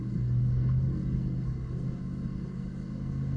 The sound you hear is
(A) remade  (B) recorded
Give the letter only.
A